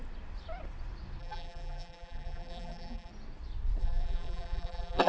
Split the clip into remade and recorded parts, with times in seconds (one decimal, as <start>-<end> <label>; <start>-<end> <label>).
0.0-1.2 recorded; 1.2-3.1 remade; 3.1-3.8 recorded; 3.8-5.1 remade